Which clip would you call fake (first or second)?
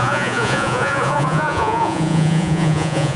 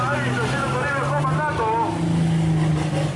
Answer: first